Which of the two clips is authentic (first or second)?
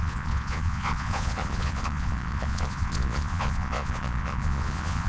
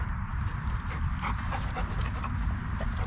second